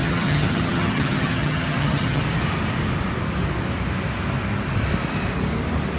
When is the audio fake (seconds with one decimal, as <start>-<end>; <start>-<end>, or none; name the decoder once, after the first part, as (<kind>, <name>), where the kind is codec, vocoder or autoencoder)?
0.0-2.2 (vocoder, HiFi-GAN)